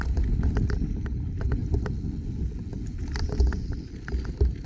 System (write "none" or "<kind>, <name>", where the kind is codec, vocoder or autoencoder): none